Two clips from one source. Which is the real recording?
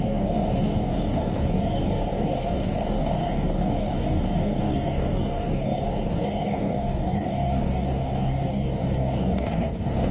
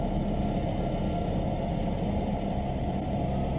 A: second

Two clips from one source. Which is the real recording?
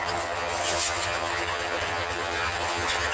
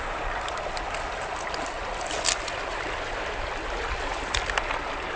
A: second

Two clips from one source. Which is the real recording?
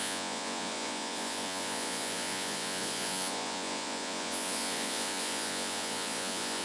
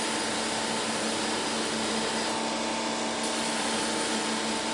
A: second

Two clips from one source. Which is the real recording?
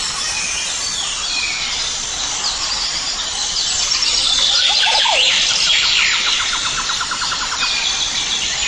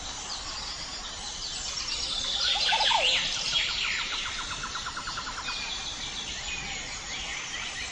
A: second